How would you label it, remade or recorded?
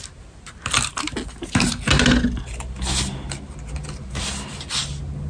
recorded